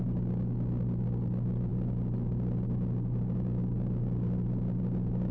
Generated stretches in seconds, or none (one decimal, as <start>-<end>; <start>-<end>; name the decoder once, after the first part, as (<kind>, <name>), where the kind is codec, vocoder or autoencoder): none